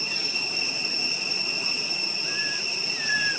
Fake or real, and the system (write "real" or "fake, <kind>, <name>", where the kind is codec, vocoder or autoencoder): real